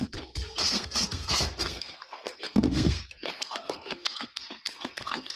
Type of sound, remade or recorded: remade